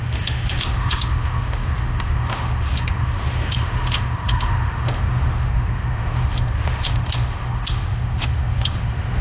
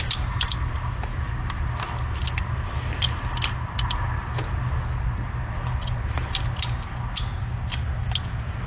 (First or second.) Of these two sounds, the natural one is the second